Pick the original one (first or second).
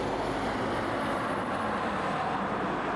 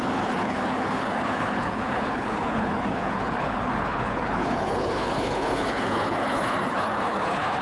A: first